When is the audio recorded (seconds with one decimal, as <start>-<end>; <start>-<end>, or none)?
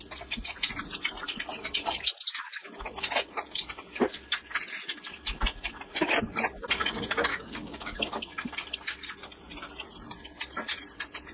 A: 0.0-7.3; 8.0-11.3